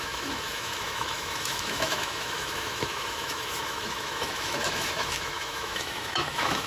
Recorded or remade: remade